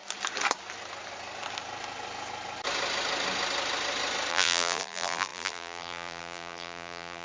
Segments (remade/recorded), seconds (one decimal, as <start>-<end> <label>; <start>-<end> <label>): 0.0-4.3 recorded; 4.3-7.2 remade